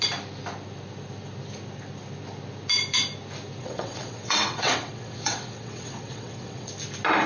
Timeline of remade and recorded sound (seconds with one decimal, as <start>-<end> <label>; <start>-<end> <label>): 0.0-3.6 recorded; 3.6-6.7 remade; 6.7-7.3 recorded